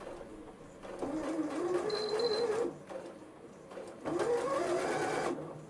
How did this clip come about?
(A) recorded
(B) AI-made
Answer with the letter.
A